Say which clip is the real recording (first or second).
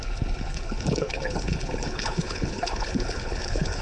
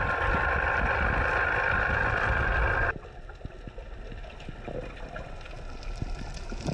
second